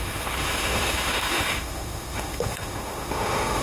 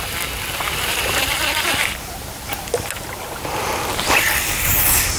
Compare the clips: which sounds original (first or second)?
second